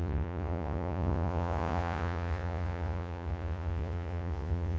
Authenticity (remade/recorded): remade